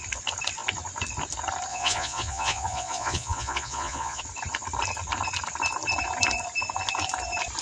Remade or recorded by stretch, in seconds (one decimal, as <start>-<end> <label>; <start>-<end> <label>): 0.0-1.7 recorded; 1.7-4.2 remade; 4.2-7.6 recorded

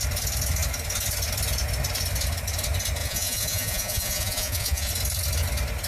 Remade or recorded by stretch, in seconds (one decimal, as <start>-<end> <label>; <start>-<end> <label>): 0.0-3.0 recorded; 3.0-4.9 remade; 4.9-5.9 recorded

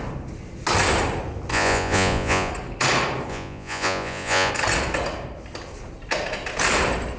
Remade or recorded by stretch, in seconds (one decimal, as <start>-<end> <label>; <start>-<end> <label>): 0.0-1.5 recorded; 1.5-2.5 remade; 2.5-3.3 recorded; 3.3-4.5 remade; 4.5-7.2 recorded

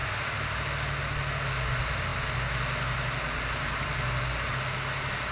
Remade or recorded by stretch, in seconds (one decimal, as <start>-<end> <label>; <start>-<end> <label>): 0.0-5.3 recorded

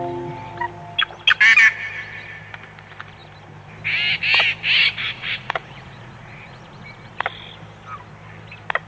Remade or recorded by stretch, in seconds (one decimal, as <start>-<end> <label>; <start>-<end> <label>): 0.0-5.0 recorded; 5.0-7.1 remade; 7.1-8.9 recorded